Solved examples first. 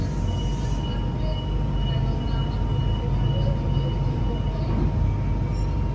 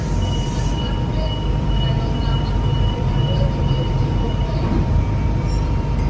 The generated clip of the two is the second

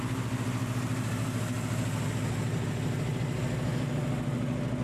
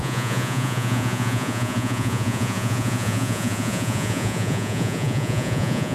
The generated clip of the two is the second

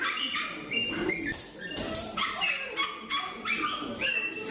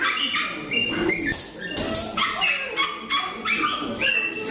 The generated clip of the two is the first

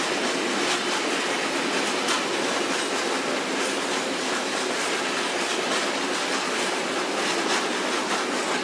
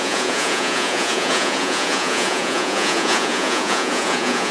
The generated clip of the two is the second